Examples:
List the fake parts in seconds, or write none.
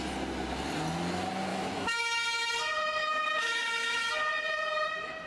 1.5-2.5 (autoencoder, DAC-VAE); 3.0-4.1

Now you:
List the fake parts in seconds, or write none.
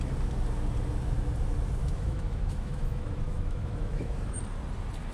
1.8-4.4 (autoencoder, DAC-VAE)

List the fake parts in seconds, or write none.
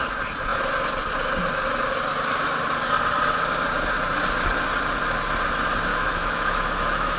5.9-7.2 (autoencoder, DAC-VAE)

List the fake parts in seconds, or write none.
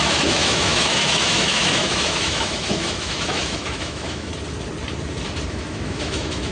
0.0-4.3 (autoencoder, DAC-VAE); 5.5-6.5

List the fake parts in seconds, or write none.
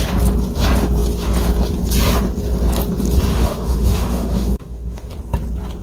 3.3-5.1 (autoencoder, DAC-VAE)